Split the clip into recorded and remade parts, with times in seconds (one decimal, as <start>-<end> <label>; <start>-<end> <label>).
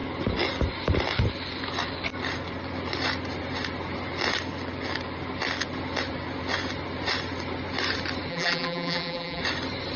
0.0-8.3 recorded; 8.3-9.4 remade; 9.4-10.0 recorded